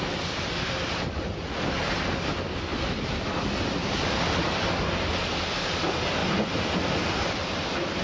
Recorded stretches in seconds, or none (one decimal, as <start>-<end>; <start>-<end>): 0.0-8.0